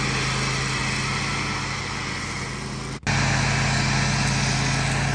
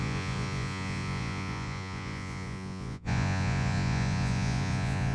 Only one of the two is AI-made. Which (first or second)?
second